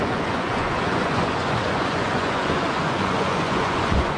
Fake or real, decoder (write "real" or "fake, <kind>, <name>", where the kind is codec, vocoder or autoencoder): fake, vocoder, Vocos